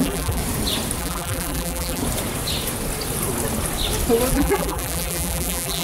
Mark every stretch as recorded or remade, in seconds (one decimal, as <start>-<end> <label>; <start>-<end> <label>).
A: 0.0-0.4 remade; 0.4-1.0 recorded; 1.0-2.0 remade; 2.0-4.3 recorded; 4.3-5.8 remade